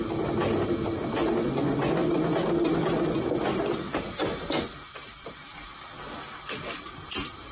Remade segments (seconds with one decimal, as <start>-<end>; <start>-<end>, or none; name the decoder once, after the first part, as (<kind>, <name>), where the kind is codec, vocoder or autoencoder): none

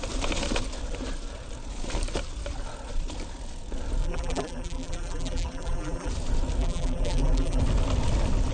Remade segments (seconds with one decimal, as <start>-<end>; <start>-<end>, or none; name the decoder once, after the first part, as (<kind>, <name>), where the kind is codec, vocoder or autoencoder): 4.0-6.1 (vocoder, BigVGAN v2); 6.6-7.6

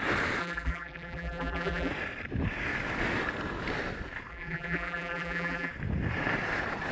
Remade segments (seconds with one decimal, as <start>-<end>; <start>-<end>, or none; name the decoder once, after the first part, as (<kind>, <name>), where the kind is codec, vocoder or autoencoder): 0.4-1.9 (vocoder, BigVGAN v2); 4.3-5.7

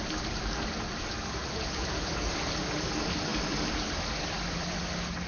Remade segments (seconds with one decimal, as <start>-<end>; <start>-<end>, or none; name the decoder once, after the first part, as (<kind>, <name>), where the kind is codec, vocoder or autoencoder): 0.0-1.4 (vocoder, BigVGAN v2); 2.3-5.3

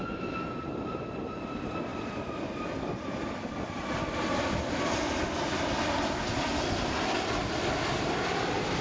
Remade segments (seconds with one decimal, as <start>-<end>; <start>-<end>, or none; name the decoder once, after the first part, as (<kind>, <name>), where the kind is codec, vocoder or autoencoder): 1.9-5.8 (vocoder, BigVGAN v2); 6.5-8.8

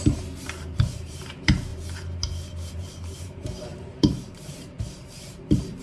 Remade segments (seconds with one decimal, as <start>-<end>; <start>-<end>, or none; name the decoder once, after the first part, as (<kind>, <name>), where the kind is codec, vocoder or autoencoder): 0.0-1.7 (vocoder, BigVGAN v2); 2.7-5.8